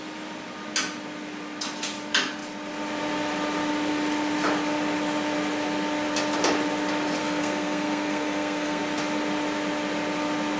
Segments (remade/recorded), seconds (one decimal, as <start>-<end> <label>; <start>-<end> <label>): 0.0-7.2 recorded; 7.2-8.8 remade; 8.8-10.6 recorded